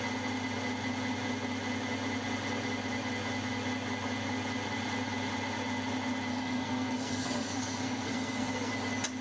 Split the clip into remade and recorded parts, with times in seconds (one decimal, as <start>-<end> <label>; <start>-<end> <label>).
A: 0.0-6.3 recorded; 6.3-8.7 remade; 8.7-9.2 recorded